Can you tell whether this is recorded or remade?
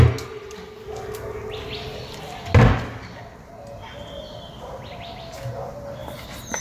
recorded